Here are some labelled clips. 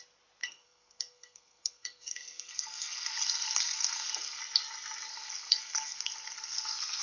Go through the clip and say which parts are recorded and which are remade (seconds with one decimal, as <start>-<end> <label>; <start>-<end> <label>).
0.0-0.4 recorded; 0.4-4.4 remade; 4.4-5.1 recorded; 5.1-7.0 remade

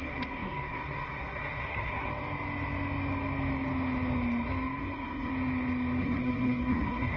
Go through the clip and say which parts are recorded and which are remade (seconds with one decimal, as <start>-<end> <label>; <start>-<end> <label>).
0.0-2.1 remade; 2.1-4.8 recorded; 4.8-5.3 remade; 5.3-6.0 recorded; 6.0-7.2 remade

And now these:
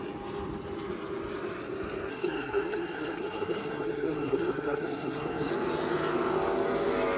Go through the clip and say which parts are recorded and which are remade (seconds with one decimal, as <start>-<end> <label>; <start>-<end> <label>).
0.0-2.1 recorded; 2.1-5.5 remade; 5.5-7.2 recorded

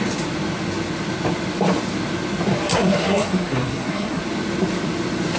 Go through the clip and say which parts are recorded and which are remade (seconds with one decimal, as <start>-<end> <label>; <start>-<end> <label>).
0.0-2.7 recorded; 2.7-4.2 remade; 4.2-5.4 recorded

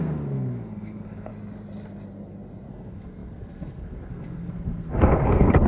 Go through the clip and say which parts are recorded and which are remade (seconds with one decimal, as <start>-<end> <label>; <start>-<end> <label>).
0.0-1.3 remade; 1.3-2.7 recorded; 2.7-5.7 remade

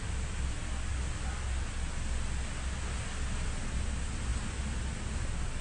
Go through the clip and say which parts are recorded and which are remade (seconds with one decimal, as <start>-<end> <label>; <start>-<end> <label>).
0.0-5.6 recorded